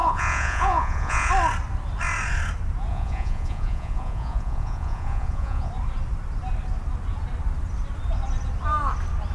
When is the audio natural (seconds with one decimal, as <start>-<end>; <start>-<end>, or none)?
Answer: 1.3-2.9; 5.7-9.3